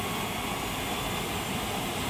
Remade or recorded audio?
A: recorded